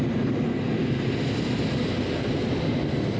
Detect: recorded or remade recorded